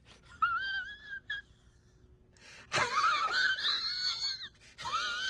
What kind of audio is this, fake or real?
real